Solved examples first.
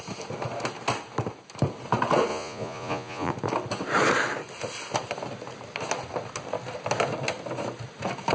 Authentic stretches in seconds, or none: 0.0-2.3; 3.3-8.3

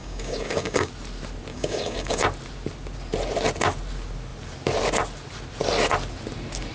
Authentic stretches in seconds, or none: 0.9-1.5; 2.2-6.7

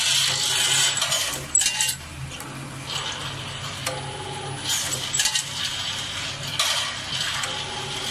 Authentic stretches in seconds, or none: 0.0-8.1